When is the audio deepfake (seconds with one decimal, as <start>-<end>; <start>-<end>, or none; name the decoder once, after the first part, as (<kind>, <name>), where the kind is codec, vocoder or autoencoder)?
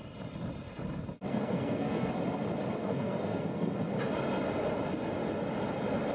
1.3-2.1 (codec, SNAC); 2.8-3.9